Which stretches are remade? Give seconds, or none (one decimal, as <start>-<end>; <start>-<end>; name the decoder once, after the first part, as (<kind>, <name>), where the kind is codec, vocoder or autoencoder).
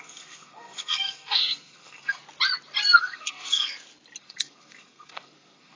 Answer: 0.0-2.2 (codec, SNAC); 3.0-3.7; 4.2-5.8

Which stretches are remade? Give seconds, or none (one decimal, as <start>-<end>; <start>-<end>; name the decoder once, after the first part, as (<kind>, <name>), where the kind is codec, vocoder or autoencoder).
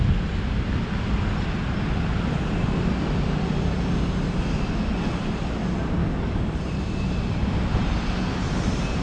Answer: 6.0-6.6 (codec, DAC)